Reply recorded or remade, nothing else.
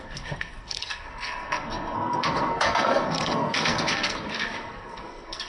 remade